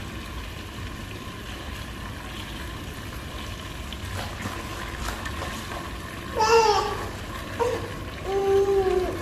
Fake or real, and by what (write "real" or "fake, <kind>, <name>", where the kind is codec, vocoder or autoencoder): real